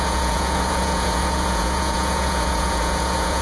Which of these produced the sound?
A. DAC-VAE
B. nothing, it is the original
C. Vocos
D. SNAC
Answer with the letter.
C